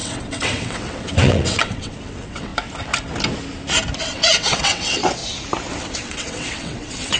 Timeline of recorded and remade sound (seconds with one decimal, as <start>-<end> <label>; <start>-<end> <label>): 0.0-2.5 remade; 2.5-4.0 recorded; 4.0-5.2 remade; 5.2-5.8 recorded; 5.8-7.2 remade